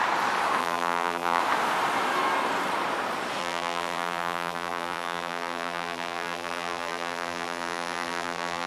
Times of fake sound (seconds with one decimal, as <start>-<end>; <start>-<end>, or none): 0.6-1.4; 3.4-8.7